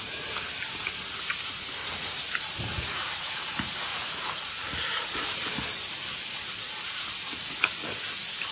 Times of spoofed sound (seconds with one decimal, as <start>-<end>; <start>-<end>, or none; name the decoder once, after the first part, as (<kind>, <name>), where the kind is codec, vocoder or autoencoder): 1.8-2.3 (vocoder, Vocos); 2.7-3.3; 3.9-5.3